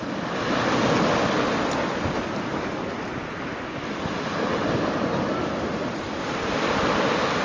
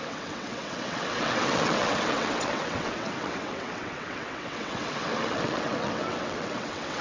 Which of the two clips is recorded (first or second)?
first